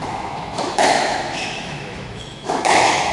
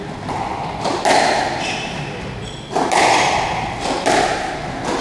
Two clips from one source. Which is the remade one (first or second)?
first